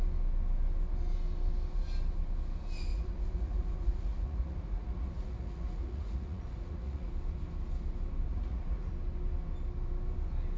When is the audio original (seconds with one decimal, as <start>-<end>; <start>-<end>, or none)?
0.0-2.9; 7.1-8.3; 8.9-10.6